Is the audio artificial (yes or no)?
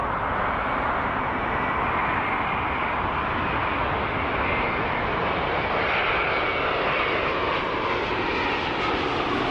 no